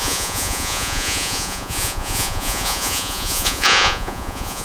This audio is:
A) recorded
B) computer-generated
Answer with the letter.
B